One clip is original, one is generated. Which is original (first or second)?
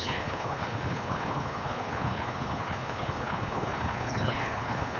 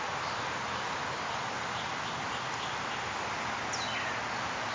second